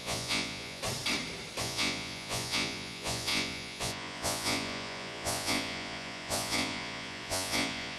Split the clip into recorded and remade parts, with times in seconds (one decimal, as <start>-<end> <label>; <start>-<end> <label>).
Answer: 0.0-0.8 remade; 0.8-1.6 recorded; 1.6-8.0 remade